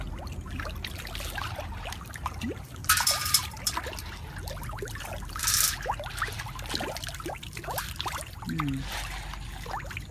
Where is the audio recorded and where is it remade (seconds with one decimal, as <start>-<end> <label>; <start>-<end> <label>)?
0.0-2.8 recorded; 2.8-3.6 remade; 3.6-10.1 recorded